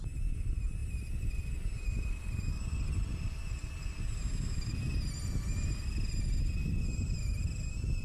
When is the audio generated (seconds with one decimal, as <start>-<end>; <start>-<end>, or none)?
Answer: none